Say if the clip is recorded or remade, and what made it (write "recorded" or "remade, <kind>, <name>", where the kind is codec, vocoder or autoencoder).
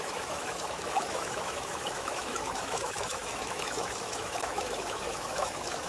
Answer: remade, autoencoder, DAC-VAE